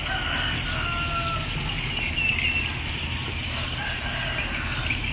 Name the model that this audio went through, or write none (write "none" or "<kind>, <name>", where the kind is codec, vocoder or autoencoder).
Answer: none